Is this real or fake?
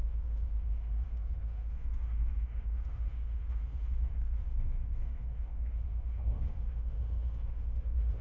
fake